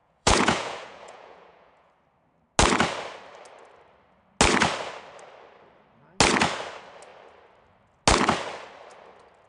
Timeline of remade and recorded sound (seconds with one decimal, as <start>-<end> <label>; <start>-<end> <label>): 0.0-1.9 remade; 1.9-9.5 recorded